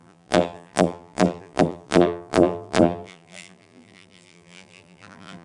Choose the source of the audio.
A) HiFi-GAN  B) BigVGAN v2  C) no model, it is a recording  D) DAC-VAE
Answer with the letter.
B